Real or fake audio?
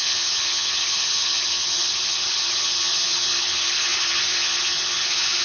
fake